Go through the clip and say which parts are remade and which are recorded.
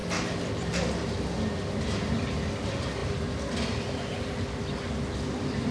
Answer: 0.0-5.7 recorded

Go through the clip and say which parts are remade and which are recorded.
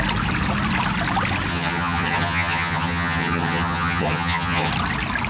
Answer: 0.0-1.5 recorded; 1.5-4.7 remade; 4.7-5.3 recorded